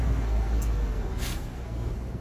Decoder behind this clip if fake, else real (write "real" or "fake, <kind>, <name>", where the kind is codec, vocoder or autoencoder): fake, codec, SNAC